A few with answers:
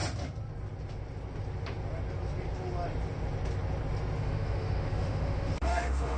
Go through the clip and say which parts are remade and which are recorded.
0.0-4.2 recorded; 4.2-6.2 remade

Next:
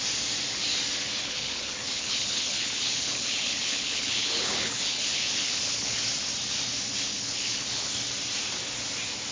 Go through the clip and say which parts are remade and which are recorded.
0.0-1.2 recorded; 1.2-6.0 remade; 6.0-7.1 recorded; 7.1-7.9 remade; 7.9-9.3 recorded